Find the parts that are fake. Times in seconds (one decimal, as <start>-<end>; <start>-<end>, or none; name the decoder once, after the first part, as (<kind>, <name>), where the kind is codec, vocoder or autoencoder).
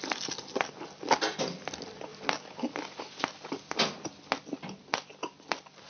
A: none